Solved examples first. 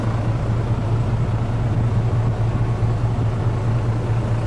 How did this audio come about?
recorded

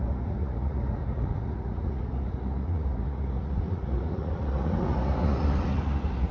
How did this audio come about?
remade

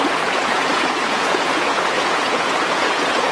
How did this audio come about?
remade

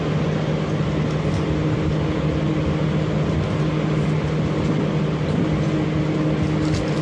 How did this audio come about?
recorded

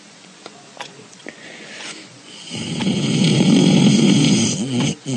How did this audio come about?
remade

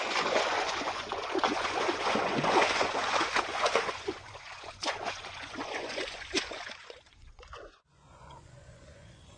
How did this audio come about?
remade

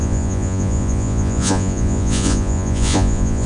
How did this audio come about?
remade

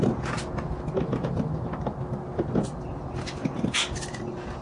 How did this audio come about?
recorded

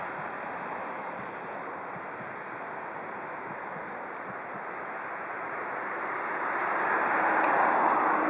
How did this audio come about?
recorded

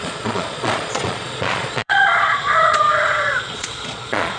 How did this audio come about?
remade